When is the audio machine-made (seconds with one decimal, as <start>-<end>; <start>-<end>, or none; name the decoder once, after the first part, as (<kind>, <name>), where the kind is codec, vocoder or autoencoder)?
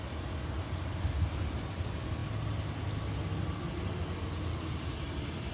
none